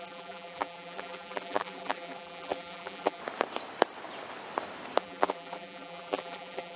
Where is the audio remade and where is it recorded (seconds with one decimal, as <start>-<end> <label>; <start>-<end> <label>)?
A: 0.0-3.2 remade; 3.2-5.0 recorded; 5.0-6.8 remade